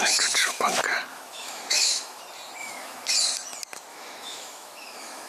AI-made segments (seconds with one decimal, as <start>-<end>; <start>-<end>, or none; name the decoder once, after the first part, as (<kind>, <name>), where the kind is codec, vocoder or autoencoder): 0.0-0.6 (autoencoder, DAC-VAE); 1.1-2.2; 2.6-3.1; 3.9-5.3